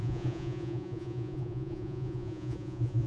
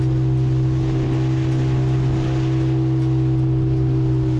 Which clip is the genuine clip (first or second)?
second